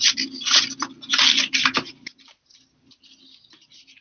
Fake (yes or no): no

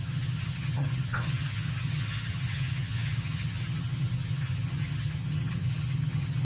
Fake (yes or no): yes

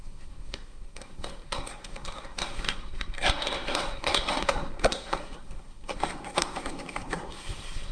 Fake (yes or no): yes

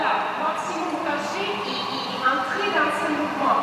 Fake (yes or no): no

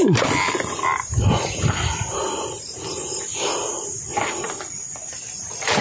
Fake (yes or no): no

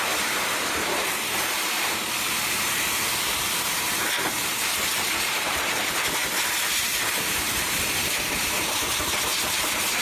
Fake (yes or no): yes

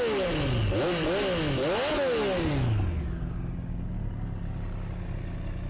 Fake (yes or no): no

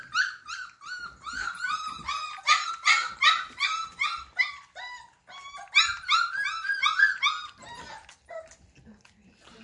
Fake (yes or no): no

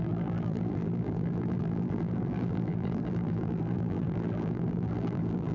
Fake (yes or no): yes